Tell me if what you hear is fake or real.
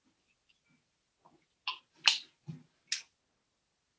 real